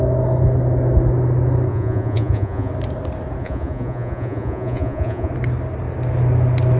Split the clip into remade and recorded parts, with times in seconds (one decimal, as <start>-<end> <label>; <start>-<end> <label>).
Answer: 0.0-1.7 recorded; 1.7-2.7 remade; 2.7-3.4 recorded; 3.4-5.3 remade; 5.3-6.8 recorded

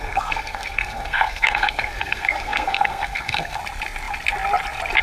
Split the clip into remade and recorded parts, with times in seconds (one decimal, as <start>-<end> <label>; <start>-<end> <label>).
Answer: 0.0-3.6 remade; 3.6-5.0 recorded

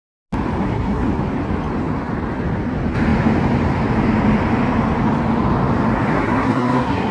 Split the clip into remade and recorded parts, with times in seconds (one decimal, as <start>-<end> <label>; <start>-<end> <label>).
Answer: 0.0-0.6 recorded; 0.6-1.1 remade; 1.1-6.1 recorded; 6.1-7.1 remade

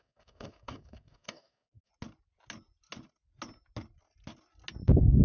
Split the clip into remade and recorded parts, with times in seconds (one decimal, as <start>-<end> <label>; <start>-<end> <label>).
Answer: 0.0-1.9 remade; 1.9-5.2 recorded

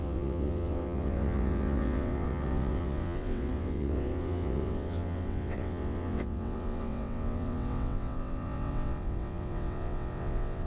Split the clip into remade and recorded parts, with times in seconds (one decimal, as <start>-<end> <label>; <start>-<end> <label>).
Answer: 0.0-10.7 remade

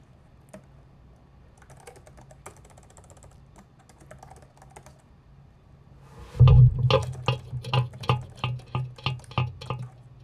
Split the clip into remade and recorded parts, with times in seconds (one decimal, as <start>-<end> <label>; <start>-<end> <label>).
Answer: 0.0-10.2 recorded

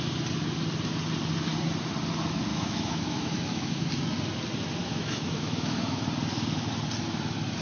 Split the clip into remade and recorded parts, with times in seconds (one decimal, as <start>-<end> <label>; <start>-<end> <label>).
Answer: 0.0-2.5 recorded; 2.5-3.9 remade; 3.9-4.8 recorded; 4.8-6.0 remade; 6.0-7.6 recorded

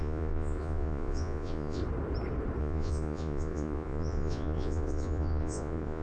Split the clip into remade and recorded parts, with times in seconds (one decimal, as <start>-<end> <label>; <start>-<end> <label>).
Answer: 0.0-1.8 remade; 1.8-2.6 recorded; 2.6-6.0 remade